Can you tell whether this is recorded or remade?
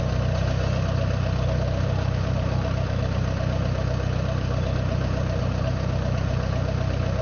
recorded